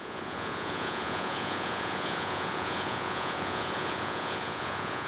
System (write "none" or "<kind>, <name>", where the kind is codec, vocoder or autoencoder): vocoder, Vocos